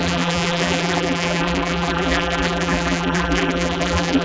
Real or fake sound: fake